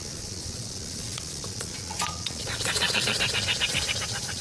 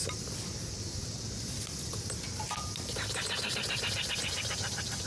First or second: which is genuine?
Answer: second